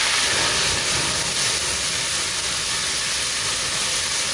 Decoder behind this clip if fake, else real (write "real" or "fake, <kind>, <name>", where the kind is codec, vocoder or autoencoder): real